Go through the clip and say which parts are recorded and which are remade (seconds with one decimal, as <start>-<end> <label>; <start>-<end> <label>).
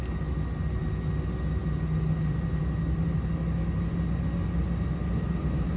0.0-5.8 recorded